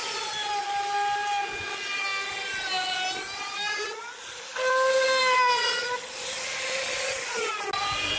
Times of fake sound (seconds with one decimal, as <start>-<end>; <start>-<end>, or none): none